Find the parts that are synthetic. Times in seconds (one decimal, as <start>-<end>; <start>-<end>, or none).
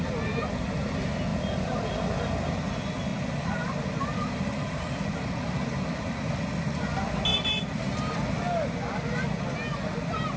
3.1-6.3; 7.3-9.0